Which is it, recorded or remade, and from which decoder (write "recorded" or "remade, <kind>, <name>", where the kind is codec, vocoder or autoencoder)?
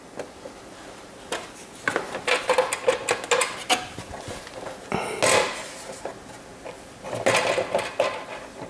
recorded